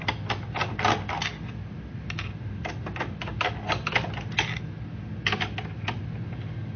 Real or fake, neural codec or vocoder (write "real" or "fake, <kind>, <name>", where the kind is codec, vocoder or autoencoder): real